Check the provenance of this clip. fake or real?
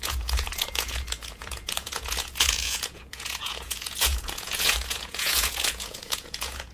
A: fake